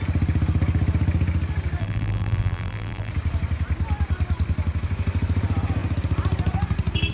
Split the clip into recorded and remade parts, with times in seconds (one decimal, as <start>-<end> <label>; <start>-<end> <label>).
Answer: 0.0-1.8 recorded; 1.8-3.1 remade; 3.1-7.1 recorded